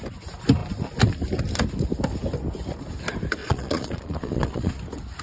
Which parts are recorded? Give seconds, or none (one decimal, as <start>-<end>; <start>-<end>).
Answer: 0.0-3.4; 4.7-5.2